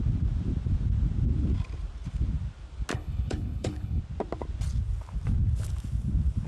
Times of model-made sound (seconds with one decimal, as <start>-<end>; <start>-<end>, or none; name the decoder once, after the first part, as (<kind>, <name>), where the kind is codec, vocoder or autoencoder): 2.9-4.0 (codec, HILCodec)

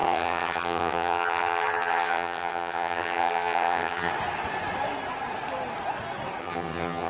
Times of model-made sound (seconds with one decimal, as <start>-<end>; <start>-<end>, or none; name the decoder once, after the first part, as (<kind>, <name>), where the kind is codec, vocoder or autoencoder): 0.0-4.1 (vocoder, HiFi-GAN); 6.4-7.1